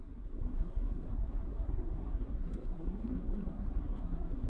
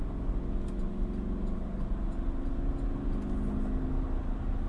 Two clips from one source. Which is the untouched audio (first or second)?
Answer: second